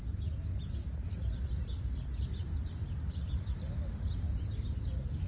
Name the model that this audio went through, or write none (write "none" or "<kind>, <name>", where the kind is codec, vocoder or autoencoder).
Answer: none